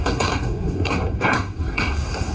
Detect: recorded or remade remade